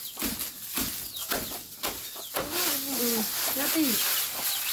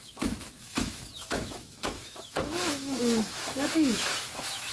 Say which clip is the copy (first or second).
second